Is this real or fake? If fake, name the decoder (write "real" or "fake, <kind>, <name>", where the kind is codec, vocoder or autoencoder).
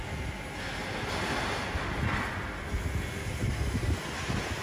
real